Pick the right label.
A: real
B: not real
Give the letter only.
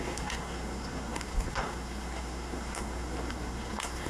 B